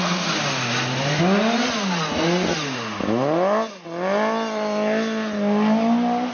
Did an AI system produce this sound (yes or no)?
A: no